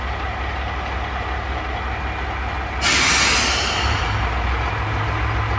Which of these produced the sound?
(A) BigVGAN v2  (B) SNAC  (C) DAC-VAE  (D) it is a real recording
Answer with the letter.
D